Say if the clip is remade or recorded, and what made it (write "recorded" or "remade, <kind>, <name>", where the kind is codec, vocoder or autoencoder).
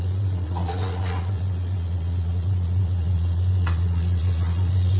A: remade, vocoder, Vocos